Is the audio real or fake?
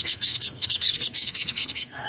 fake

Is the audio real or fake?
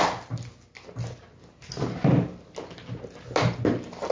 real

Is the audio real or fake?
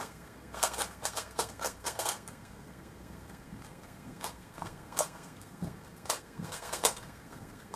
fake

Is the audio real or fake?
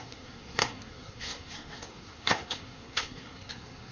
fake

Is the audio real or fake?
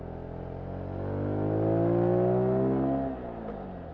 real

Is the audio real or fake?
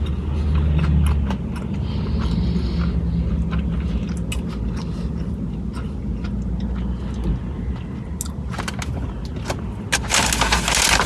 real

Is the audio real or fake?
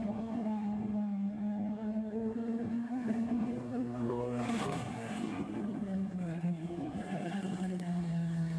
fake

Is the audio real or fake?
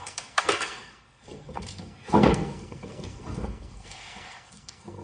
fake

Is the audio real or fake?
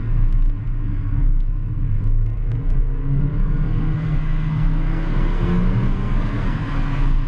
fake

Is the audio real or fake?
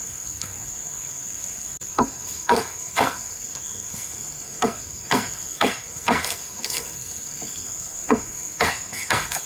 fake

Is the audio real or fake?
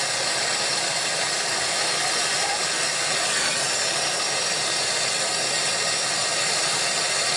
real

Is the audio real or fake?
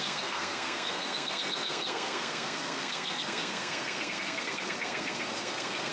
fake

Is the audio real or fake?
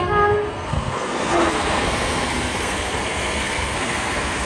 fake